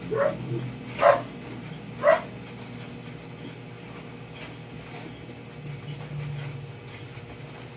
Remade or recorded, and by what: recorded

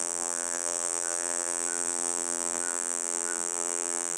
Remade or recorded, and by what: remade, vocoder, BigVGAN v2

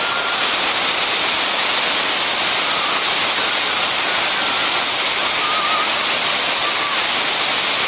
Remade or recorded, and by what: recorded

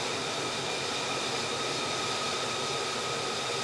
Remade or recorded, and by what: recorded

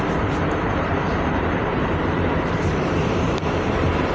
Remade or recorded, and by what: remade, vocoder, BigVGAN v2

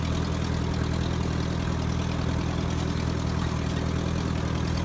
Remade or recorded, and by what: recorded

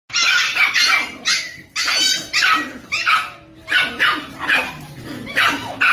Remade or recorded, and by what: recorded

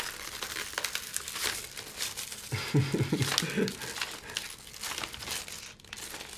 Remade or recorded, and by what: recorded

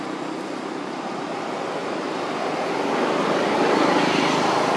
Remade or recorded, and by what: recorded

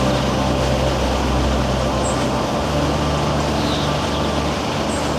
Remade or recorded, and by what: recorded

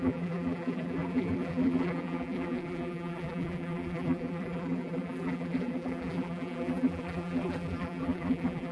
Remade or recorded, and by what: remade, vocoder, BigVGAN v2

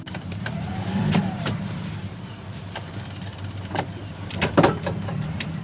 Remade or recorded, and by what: remade, vocoder, BigVGAN v2